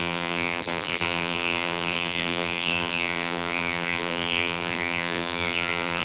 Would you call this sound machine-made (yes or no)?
yes